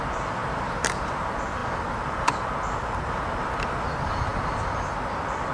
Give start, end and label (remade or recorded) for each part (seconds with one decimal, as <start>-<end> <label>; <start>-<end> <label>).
0.0-0.4 recorded; 0.4-1.2 remade; 1.2-5.5 recorded